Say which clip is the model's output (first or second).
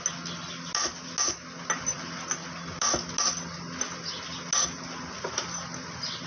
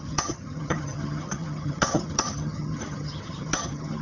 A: second